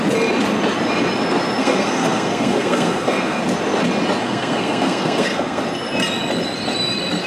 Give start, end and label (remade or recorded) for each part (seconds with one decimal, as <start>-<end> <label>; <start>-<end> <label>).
0.0-1.6 recorded; 1.6-3.4 remade; 3.4-4.2 recorded; 4.2-5.6 remade; 5.6-7.3 recorded